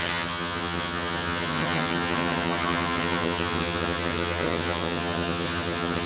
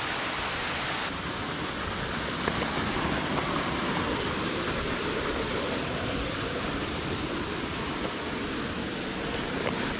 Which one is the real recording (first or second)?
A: second